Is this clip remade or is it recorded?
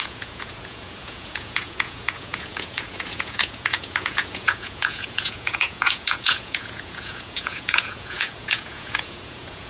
remade